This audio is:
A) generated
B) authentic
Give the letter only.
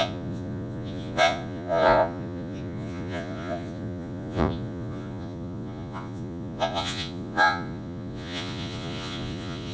A